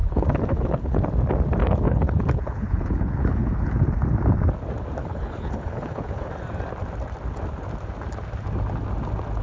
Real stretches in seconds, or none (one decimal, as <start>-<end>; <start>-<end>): 1.0-1.6; 3.7-5.0; 6.3-9.4